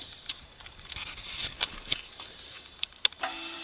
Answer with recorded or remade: remade